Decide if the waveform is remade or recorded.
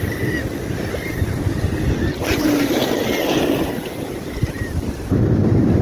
recorded